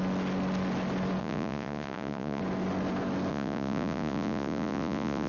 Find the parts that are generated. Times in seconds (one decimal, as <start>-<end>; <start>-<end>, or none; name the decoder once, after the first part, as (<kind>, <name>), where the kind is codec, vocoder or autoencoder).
1.2-2.4 (vocoder, Vocos); 3.3-5.3